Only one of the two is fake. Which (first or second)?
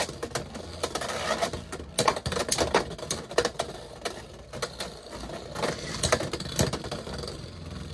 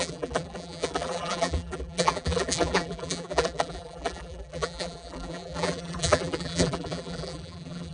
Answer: second